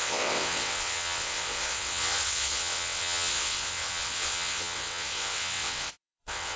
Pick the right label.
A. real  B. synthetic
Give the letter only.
B